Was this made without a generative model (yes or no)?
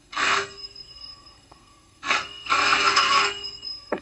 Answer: no